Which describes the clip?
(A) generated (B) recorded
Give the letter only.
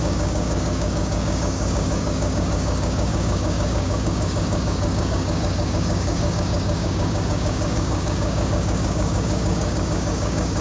A